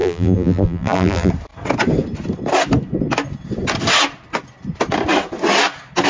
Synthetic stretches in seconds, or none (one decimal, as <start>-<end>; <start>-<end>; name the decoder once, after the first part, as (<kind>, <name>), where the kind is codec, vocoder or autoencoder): 0.0-1.3 (vocoder, BigVGAN v2)